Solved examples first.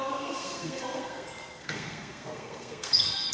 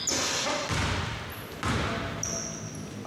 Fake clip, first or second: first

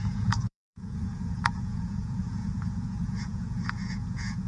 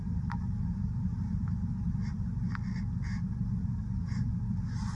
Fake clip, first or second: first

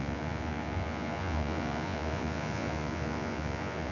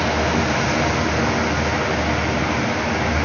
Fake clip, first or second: first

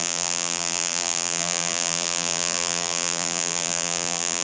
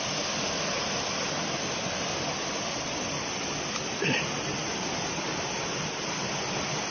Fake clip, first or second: first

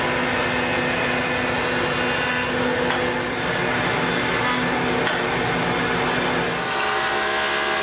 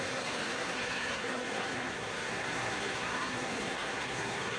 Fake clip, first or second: second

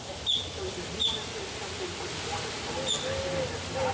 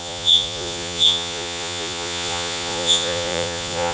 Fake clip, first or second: second